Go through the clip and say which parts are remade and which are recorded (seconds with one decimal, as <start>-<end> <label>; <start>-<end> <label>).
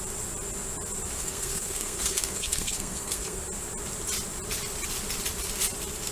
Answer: 0.0-1.2 recorded; 1.2-3.4 remade; 3.4-6.1 recorded